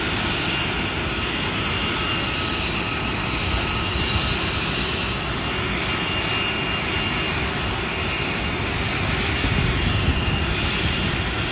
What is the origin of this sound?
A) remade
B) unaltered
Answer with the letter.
B